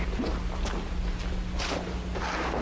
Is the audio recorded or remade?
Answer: recorded